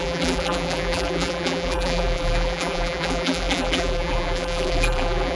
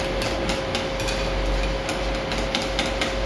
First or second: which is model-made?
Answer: first